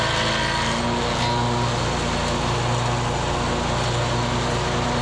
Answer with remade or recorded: recorded